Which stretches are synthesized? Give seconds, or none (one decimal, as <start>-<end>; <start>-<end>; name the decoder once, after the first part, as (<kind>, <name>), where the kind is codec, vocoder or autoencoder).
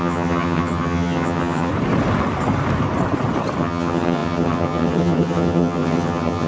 0.0-1.7 (vocoder, HiFi-GAN); 3.6-6.5